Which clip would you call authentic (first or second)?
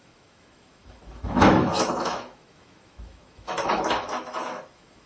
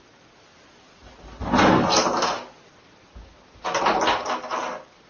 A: second